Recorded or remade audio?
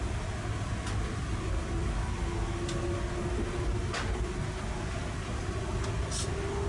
recorded